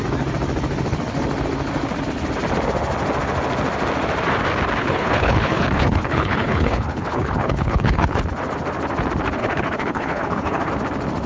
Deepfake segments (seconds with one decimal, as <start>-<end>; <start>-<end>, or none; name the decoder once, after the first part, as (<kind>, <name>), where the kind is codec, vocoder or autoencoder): 4.8-8.2 (codec, HILCodec); 9.4-10.7